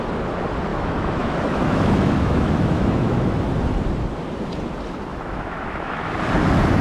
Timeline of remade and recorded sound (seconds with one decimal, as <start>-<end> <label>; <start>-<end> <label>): 0.0-0.7 recorded; 0.7-3.4 remade; 3.4-5.1 recorded; 5.1-6.1 remade; 6.1-6.8 recorded